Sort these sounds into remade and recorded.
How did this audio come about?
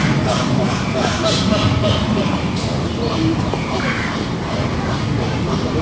recorded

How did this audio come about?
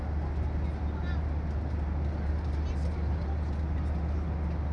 recorded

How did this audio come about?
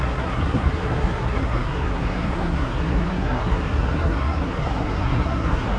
remade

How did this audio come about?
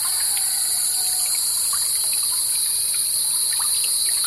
remade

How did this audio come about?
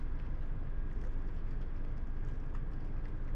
recorded